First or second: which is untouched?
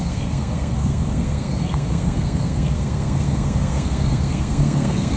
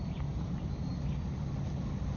second